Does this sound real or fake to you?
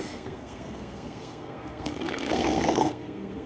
fake